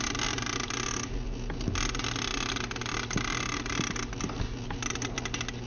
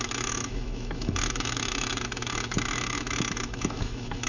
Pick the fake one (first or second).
second